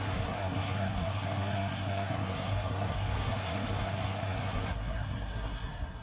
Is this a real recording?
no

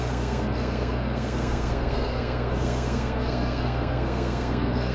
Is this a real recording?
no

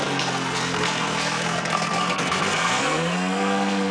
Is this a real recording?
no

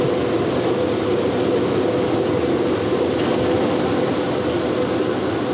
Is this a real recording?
yes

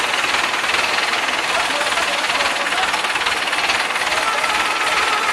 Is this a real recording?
yes